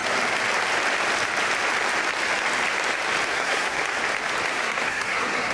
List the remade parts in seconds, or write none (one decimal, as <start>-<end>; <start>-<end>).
3.3-3.8; 4.5-5.5